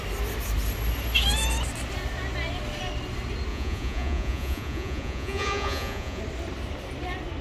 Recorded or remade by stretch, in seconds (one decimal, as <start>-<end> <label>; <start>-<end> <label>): 0.0-3.5 recorded; 3.5-6.2 remade; 6.2-7.4 recorded

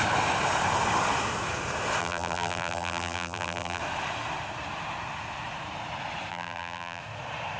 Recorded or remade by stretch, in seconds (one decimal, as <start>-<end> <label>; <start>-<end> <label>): 0.0-2.0 recorded; 2.0-3.8 remade; 3.8-6.3 recorded; 6.3-7.0 remade; 7.0-7.6 recorded

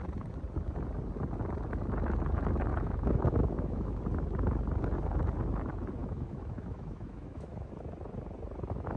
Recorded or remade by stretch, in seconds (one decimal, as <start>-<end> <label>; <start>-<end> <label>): 0.0-2.7 recorded; 2.7-4.0 remade; 4.0-6.0 recorded; 6.0-7.7 remade; 7.7-9.0 recorded

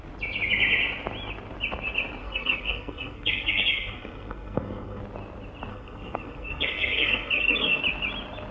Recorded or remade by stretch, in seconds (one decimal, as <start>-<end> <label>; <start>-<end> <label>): 0.0-2.2 recorded; 2.2-5.0 remade; 5.0-5.7 recorded; 5.7-7.8 remade; 7.8-8.5 recorded

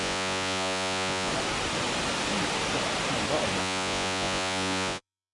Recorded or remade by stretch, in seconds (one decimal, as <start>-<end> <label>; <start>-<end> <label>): 0.0-1.3 remade; 1.3-3.6 recorded; 3.6-5.3 remade

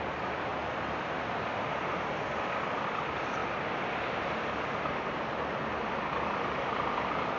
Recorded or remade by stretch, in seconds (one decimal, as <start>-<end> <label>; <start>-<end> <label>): 0.0-7.4 recorded

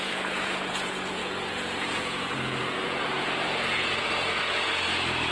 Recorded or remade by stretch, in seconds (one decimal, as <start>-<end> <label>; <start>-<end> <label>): 0.0-5.3 remade